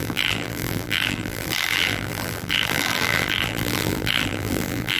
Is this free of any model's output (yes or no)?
no